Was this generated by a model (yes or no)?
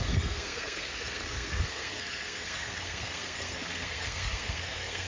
yes